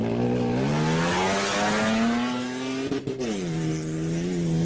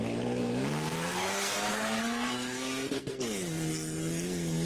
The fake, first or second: second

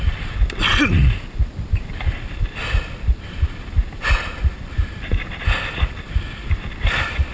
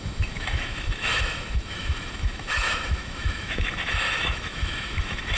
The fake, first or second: second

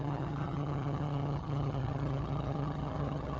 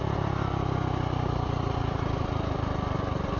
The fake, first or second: first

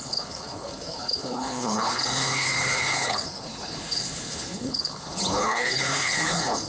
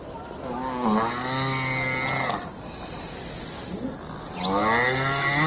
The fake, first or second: first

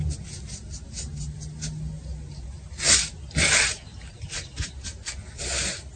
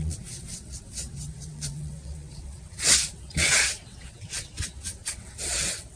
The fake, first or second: second